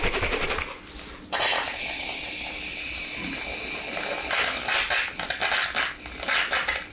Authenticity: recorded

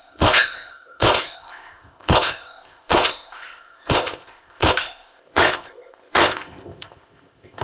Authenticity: remade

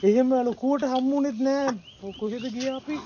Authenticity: recorded